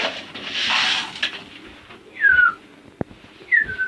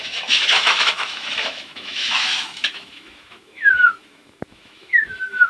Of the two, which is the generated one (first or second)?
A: second